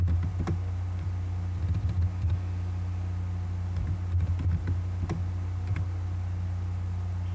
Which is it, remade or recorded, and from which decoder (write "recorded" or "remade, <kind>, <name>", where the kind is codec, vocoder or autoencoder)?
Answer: recorded